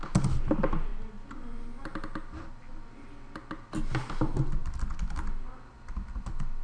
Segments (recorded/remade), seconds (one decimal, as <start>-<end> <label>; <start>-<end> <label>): 0.0-6.6 recorded